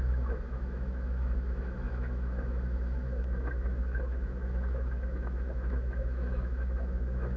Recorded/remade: remade